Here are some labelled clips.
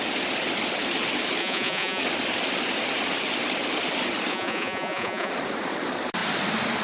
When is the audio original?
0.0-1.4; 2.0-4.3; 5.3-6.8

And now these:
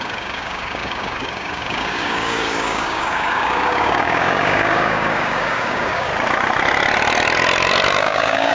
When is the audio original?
6.1-8.0

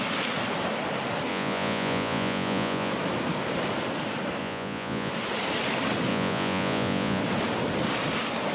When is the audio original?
0.0-1.3; 2.9-4.4; 5.1-6.1; 7.2-8.5

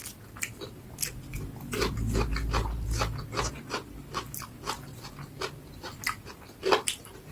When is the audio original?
0.0-7.3

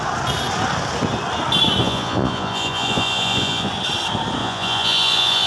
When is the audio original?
0.0-1.8; 3.7-4.4

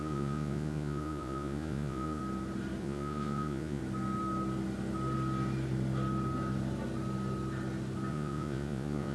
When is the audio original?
2.2-2.8; 3.8-8.1